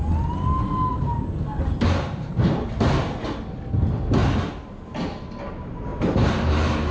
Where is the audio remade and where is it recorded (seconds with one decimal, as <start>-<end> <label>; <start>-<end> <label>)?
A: 0.0-0.9 recorded; 0.9-2.7 remade; 2.7-5.9 recorded; 5.9-6.9 remade